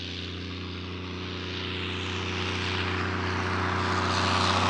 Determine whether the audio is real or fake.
real